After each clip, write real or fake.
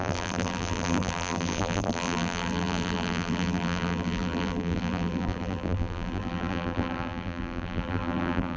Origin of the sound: fake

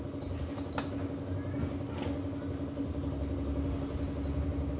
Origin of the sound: real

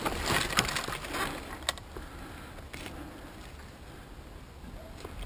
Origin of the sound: real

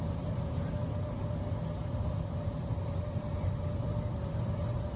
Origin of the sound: real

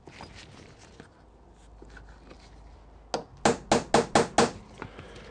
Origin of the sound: real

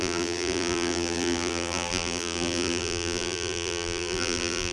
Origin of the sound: fake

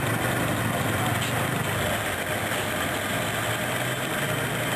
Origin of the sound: real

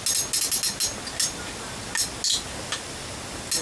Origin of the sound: real